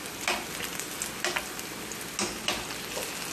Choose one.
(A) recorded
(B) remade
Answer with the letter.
A